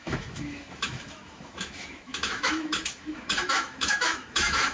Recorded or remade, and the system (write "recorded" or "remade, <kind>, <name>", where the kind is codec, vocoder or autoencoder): remade, autoencoder, DAC-VAE